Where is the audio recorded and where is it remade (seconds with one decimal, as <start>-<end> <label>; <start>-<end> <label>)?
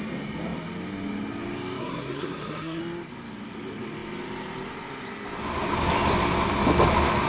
0.0-1.8 recorded; 1.8-2.8 remade; 2.8-7.3 recorded